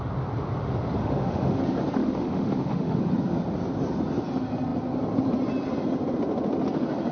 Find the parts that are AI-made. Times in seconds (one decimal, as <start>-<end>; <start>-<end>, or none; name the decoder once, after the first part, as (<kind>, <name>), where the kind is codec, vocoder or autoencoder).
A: 1.0-1.6 (autoencoder, DAC-VAE); 2.0-3.0